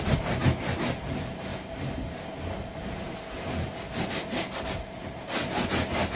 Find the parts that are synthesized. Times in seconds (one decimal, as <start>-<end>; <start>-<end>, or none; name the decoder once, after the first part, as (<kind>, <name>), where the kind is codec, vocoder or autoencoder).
none